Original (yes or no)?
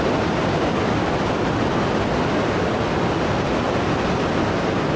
yes